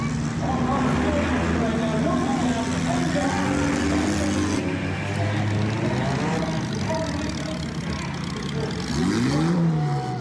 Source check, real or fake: real